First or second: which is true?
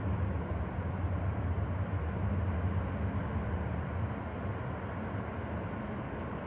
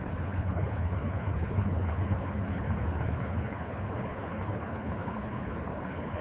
first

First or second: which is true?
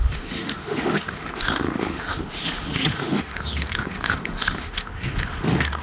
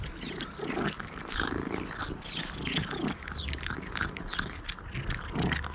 second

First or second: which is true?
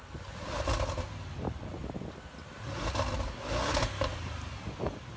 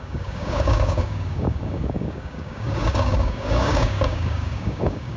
first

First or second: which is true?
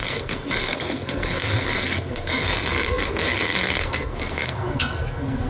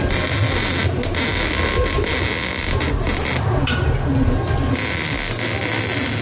second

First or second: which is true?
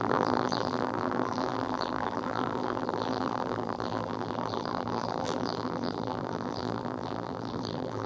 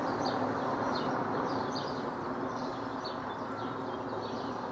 second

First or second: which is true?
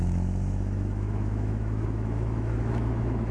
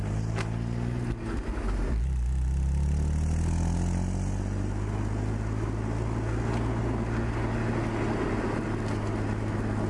second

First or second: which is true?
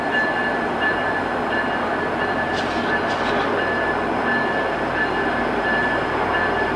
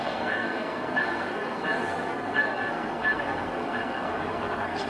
first